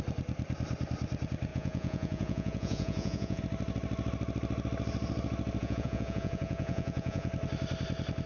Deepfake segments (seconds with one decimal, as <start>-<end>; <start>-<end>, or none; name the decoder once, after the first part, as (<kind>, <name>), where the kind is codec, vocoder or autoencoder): 1.5-3.4 (vocoder, Vocos); 5.6-7.3